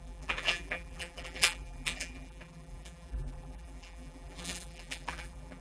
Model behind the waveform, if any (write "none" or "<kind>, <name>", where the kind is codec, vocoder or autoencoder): vocoder, BigVGAN v2